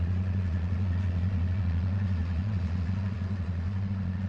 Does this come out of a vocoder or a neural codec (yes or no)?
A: yes